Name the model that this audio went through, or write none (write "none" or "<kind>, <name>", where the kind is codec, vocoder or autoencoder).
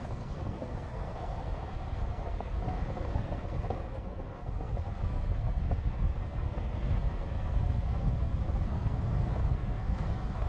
codec, SNAC